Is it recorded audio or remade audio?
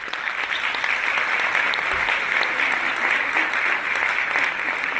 recorded